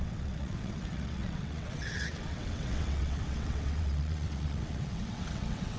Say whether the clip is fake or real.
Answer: fake